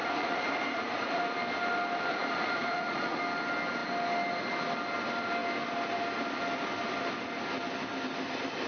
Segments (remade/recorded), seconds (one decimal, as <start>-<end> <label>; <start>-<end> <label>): 0.0-1.2 remade; 1.2-2.1 recorded; 2.1-3.2 remade; 3.2-8.7 recorded